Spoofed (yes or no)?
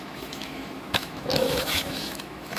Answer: yes